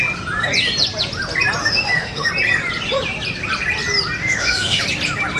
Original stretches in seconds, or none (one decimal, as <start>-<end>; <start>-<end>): 0.0-1.6; 2.3-4.2; 4.8-5.4